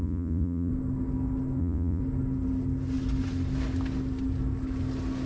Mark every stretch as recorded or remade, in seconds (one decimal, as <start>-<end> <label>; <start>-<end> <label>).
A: 0.0-0.7 remade; 0.7-1.6 recorded; 1.6-2.0 remade; 2.0-5.3 recorded